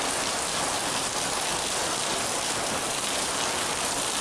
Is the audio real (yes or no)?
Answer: yes